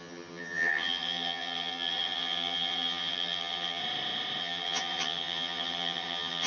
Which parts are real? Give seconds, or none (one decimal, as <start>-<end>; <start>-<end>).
3.8-4.4